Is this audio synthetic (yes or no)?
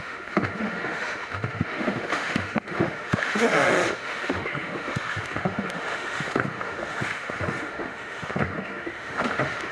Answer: yes